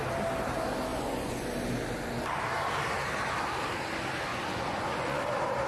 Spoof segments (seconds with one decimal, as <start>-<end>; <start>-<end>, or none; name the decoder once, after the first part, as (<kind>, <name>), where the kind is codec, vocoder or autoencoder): 0.9-1.5 (vocoder, Vocos); 4.3-5.2